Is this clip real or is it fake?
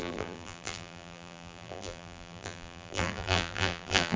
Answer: fake